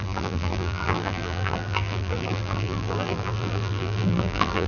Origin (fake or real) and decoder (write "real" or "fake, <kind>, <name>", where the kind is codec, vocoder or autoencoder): fake, vocoder, BigVGAN v2